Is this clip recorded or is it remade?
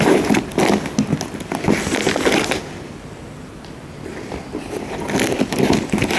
recorded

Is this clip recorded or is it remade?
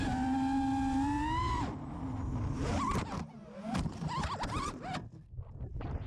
recorded